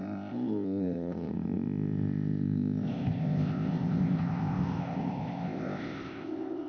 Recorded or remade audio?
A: remade